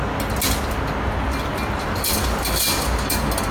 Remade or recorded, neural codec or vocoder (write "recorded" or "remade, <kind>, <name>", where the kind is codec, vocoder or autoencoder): recorded